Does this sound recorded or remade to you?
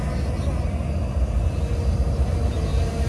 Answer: recorded